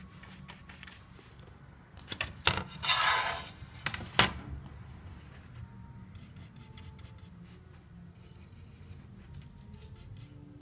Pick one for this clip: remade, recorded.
recorded